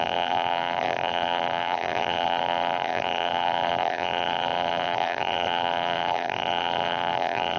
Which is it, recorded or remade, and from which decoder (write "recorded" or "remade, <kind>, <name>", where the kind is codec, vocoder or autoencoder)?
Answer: remade, vocoder, BigVGAN v2